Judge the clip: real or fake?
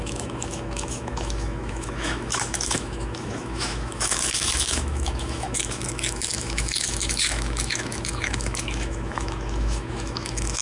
fake